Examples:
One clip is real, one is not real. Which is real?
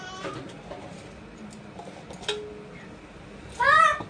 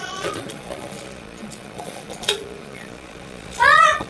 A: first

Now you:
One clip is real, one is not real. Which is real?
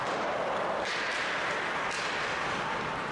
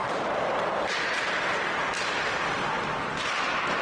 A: first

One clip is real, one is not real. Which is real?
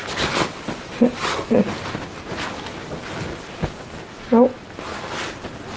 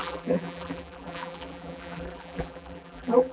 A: first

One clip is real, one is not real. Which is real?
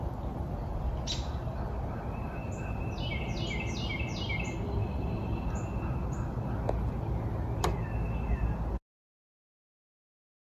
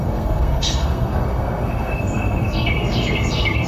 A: first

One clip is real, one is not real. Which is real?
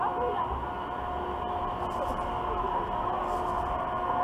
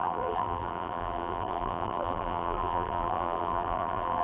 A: first